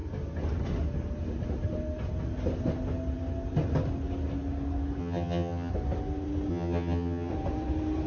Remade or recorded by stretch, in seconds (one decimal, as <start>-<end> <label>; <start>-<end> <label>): 0.0-5.0 recorded; 5.0-5.7 remade; 5.7-6.5 recorded; 6.5-7.3 remade; 7.3-8.1 recorded